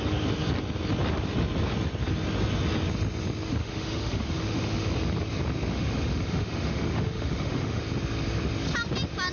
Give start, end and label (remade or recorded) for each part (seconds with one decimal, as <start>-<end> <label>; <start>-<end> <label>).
0.0-3.6 recorded; 3.6-4.9 remade; 4.9-5.7 recorded; 5.7-7.8 remade; 7.8-9.3 recorded

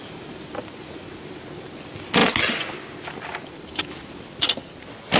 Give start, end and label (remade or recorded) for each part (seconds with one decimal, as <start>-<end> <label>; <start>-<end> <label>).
0.0-5.2 recorded

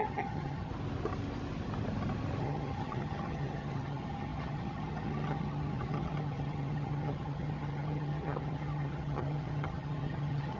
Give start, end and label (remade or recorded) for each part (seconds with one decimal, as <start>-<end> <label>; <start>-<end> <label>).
0.0-0.7 remade; 0.7-2.4 recorded; 2.4-10.6 remade

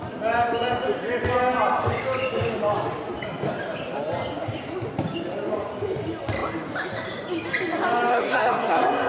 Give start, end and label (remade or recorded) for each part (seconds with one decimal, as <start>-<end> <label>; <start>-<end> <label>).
0.0-8.1 recorded; 8.1-9.1 remade

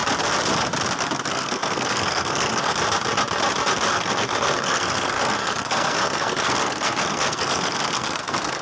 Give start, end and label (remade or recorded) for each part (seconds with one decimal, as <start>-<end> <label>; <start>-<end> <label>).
0.0-1.3 recorded; 1.3-2.7 remade; 2.7-3.9 recorded; 3.9-8.6 remade

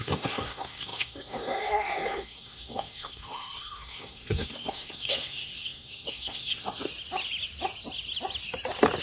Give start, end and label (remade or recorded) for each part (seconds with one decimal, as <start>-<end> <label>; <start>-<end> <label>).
0.0-6.9 remade; 6.9-9.0 recorded

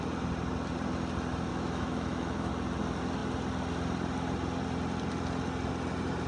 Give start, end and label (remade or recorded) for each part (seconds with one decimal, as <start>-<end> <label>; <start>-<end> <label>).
0.0-1.5 recorded; 1.5-2.5 remade; 2.5-6.3 recorded